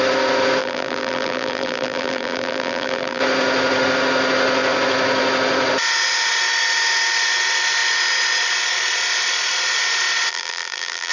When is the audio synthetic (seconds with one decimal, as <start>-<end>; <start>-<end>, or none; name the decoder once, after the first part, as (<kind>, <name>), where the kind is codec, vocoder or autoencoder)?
0.6-3.2 (vocoder, BigVGAN v2); 10.3-11.1